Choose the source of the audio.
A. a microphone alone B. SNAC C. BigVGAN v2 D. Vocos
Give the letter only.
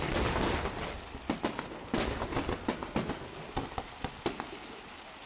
A